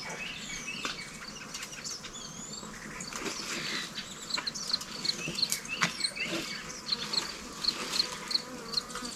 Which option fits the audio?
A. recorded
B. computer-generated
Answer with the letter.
A